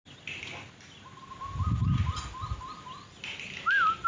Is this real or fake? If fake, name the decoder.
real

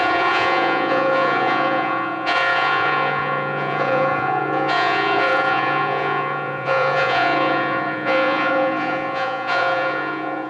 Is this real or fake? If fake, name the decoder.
fake, vocoder, Vocos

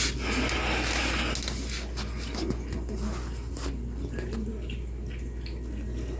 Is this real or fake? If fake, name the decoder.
real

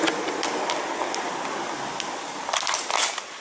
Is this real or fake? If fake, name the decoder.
real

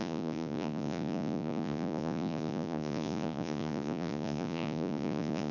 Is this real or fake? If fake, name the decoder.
fake, vocoder, Vocos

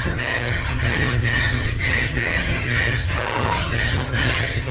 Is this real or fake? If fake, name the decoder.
fake, vocoder, HiFi-GAN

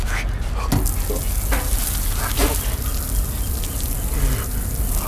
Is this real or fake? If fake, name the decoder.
real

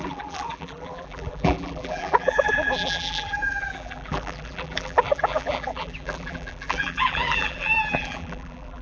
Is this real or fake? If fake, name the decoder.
fake, vocoder, BigVGAN v2